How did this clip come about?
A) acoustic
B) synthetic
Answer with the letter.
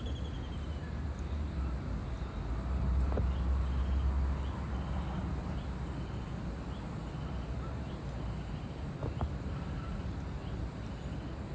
A